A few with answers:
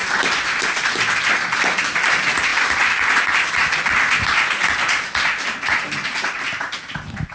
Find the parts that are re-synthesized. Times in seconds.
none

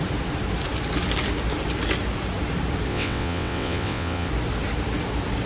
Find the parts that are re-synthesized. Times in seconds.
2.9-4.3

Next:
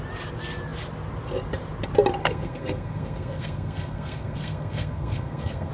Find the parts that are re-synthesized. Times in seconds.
2.2-5.7

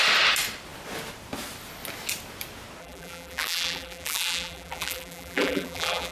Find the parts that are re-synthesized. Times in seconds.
2.8-6.1

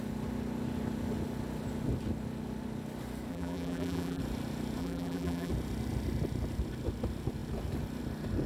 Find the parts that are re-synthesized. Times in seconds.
3.3-4.2; 4.8-5.5

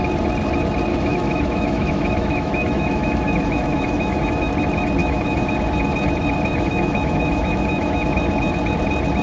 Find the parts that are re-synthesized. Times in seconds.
0.9-4.5; 5.0-5.5; 6.5-8.1